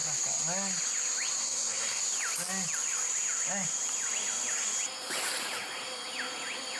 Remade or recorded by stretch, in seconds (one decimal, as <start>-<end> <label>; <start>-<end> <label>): 0.0-1.4 recorded; 1.4-2.0 remade; 2.0-6.8 recorded